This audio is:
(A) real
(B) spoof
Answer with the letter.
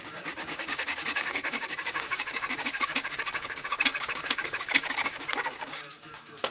B